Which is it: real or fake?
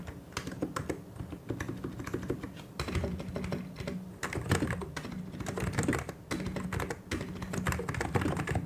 real